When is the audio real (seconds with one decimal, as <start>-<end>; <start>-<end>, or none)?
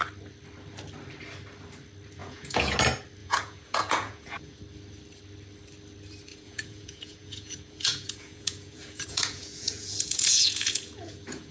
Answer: 0.0-2.2; 2.8-3.2; 4.6-6.3